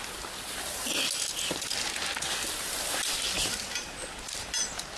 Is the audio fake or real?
real